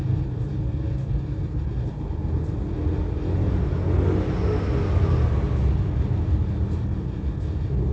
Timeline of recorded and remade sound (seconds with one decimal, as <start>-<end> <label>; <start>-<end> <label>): 0.0-7.9 recorded